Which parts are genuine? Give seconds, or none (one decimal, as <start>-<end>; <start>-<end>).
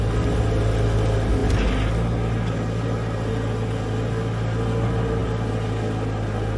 0.0-6.6